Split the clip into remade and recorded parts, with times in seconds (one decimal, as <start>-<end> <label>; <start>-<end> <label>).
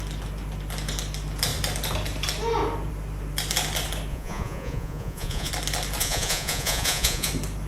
0.0-4.1 recorded; 4.1-5.5 remade; 5.5-6.0 recorded; 6.0-7.3 remade; 7.3-7.7 recorded